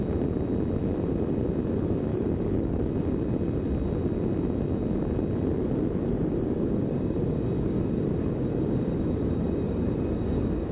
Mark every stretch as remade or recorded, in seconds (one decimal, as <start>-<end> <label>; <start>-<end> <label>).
0.0-2.1 recorded; 2.1-2.9 remade; 2.9-6.1 recorded; 6.1-10.7 remade